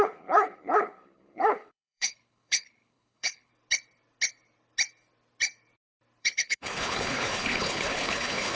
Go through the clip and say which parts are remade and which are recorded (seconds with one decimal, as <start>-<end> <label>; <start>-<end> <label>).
0.0-3.5 remade; 3.5-6.2 recorded; 6.2-8.5 remade